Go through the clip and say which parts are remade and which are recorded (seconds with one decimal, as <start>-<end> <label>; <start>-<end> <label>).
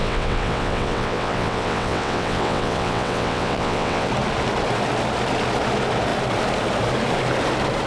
0.0-4.1 remade; 4.1-7.9 recorded